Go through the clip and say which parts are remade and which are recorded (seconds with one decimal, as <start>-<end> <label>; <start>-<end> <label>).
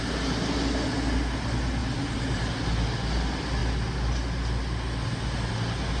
0.0-1.8 recorded; 1.8-2.5 remade; 2.5-6.0 recorded